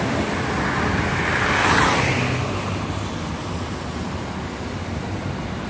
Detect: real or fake real